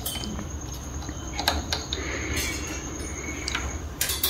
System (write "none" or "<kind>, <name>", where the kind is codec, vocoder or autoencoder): none